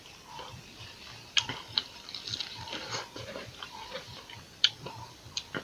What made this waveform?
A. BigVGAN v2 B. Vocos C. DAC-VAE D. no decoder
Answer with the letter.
A